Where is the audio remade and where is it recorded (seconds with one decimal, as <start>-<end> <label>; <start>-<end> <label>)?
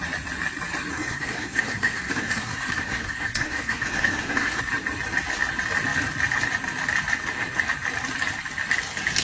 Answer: 0.0-0.9 recorded; 0.9-4.6 remade; 4.6-9.2 recorded